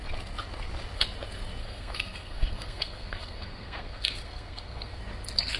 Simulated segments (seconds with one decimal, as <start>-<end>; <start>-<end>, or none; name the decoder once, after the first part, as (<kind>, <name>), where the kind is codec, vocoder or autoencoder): 1.6-5.0 (codec, SNAC)